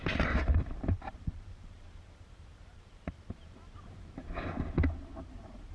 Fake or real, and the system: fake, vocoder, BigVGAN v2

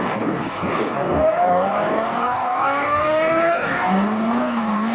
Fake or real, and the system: fake, codec, DAC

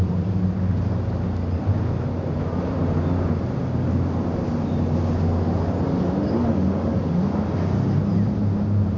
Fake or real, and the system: real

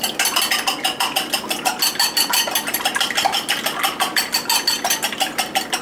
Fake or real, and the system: real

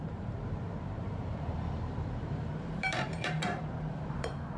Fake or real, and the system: fake, vocoder, BigVGAN v2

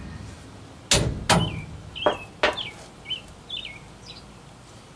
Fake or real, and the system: real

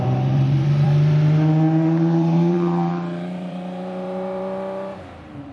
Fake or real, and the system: fake, vocoder, BigVGAN v2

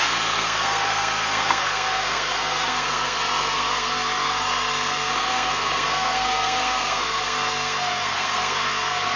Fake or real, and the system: fake, codec, SNAC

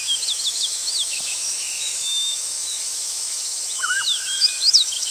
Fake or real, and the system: fake, autoencoder, DAC-VAE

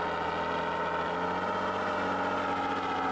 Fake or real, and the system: real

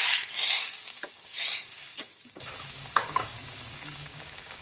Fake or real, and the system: fake, codec, DAC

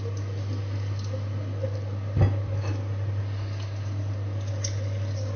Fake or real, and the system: real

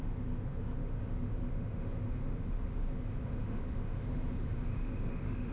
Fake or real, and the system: fake, autoencoder, DAC-VAE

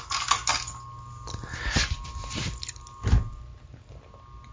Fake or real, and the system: real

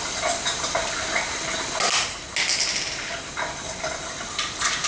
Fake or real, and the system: real